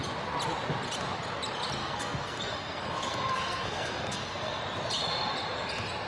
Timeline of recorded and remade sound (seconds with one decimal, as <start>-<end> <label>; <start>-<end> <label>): 0.0-1.8 recorded; 1.8-4.6 remade; 4.6-6.1 recorded